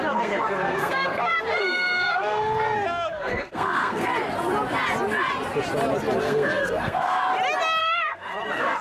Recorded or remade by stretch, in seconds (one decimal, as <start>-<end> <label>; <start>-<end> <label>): 0.0-4.1 remade; 4.1-6.2 recorded; 6.2-7.2 remade; 7.2-7.8 recorded; 7.8-8.8 remade